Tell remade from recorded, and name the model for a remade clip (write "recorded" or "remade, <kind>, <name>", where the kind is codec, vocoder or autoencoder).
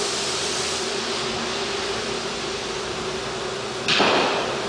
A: remade, vocoder, BigVGAN v2